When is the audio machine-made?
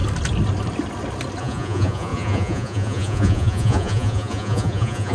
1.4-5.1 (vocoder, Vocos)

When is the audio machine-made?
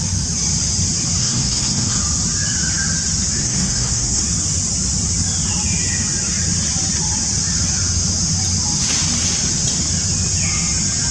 1.2-2.0 (codec, SNAC); 3.4-4.2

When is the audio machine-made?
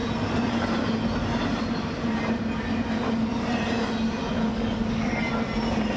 4.5-5.2 (codec, DAC)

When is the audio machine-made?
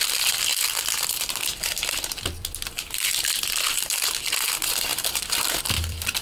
0.0-4.9 (vocoder, BigVGAN v2); 5.6-6.2